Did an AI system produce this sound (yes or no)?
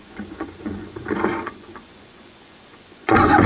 yes